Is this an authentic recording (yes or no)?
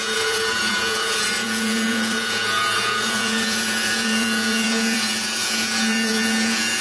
no